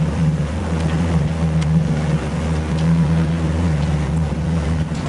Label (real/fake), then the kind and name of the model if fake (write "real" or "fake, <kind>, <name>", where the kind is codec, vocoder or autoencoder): fake, vocoder, Vocos